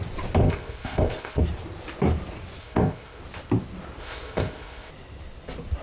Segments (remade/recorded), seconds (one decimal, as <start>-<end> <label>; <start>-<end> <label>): 0.0-0.4 recorded; 0.4-1.4 remade; 1.4-2.6 recorded; 2.6-3.2 remade; 3.2-4.0 recorded; 4.0-4.9 remade; 4.9-5.8 recorded